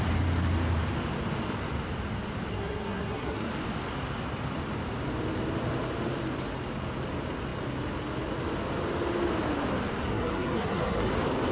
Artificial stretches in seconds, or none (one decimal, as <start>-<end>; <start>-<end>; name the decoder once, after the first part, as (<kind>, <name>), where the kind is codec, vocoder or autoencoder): 2.5-3.5 (codec, SNAC); 10.1-11.1